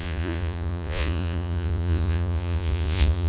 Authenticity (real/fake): fake